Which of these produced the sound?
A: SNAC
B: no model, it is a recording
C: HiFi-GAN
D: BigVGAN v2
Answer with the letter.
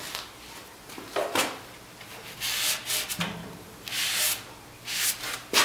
B